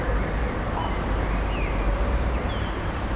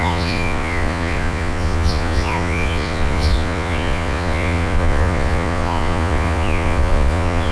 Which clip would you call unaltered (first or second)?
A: first